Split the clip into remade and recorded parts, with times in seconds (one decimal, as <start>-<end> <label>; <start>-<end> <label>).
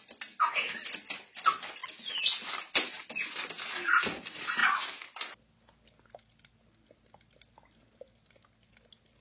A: 0.0-9.2 recorded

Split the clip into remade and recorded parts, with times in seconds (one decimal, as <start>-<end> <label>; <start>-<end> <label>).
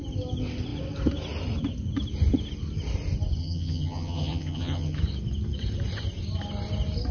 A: 0.0-3.4 recorded; 3.4-5.0 remade; 5.0-7.1 recorded